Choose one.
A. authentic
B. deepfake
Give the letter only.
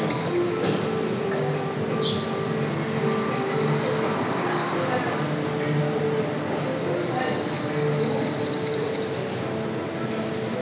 A